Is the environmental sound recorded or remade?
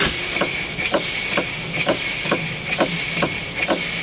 recorded